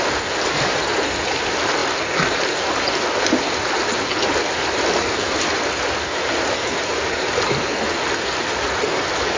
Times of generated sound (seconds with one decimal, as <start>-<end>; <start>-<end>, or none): none